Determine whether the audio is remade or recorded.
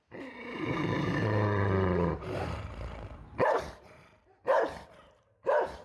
remade